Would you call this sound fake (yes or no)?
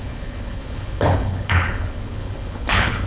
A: yes